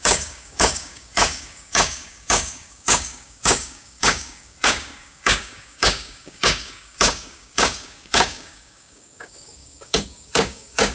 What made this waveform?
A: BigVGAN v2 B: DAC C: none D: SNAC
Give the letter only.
B